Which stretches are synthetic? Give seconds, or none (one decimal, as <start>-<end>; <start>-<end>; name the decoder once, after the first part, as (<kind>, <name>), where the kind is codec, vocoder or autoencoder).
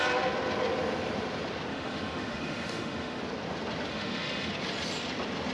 1.7-3.2 (autoencoder, DAC-VAE); 3.9-4.5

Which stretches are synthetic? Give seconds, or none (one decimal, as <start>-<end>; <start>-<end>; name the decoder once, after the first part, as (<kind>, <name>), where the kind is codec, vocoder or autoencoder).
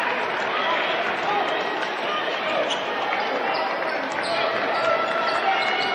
none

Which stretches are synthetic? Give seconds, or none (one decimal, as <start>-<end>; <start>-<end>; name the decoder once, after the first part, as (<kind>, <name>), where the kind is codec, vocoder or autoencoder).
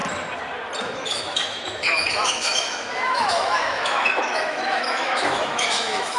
0.8-6.2 (autoencoder, DAC-VAE)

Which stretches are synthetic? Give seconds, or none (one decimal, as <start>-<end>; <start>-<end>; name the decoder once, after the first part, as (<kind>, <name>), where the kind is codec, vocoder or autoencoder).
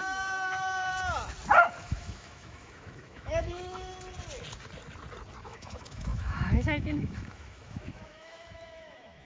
1.8-3.9 (autoencoder, DAC-VAE); 5.4-9.2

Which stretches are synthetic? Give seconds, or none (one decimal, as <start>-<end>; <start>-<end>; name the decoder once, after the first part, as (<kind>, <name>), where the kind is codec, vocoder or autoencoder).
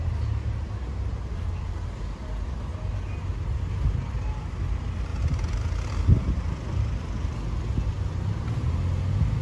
none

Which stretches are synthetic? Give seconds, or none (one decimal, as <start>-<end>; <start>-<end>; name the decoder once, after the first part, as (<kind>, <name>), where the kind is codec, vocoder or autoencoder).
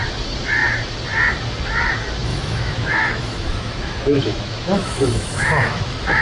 2.3-6.2 (autoencoder, DAC-VAE)